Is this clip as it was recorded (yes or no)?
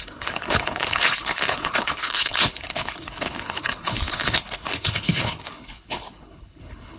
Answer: no